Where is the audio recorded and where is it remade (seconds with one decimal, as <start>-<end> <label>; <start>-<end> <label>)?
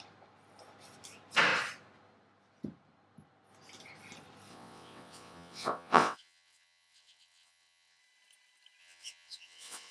0.0-4.5 recorded; 4.5-8.0 remade; 8.0-8.8 recorded; 8.8-9.9 remade